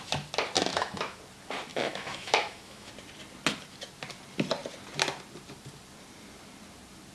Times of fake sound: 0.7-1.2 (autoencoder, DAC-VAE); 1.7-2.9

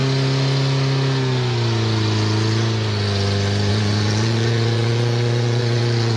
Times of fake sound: 3.7-6.2 (vocoder, Vocos)